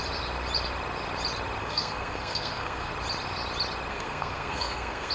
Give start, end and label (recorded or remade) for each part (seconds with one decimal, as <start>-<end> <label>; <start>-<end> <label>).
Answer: 0.0-1.6 recorded; 1.6-2.9 remade; 2.9-3.9 recorded; 3.9-5.1 remade